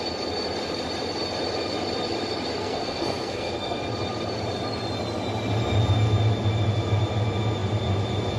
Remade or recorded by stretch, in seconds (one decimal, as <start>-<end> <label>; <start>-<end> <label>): 0.0-2.6 recorded; 2.6-3.8 remade; 3.8-8.4 recorded